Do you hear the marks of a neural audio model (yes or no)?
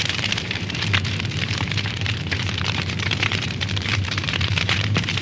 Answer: yes